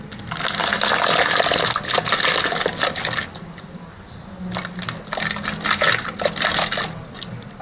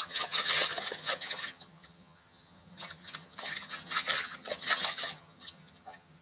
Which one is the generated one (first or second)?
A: second